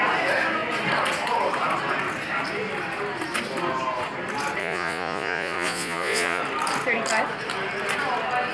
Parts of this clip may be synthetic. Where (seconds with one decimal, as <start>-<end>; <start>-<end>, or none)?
4.6-6.4